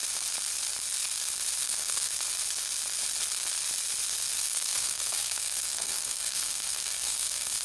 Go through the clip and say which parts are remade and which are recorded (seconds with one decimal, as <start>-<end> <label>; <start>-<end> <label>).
0.0-1.6 recorded; 1.6-2.1 remade; 2.1-4.3 recorded; 4.3-7.6 remade